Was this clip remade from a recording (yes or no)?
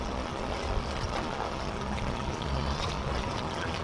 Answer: yes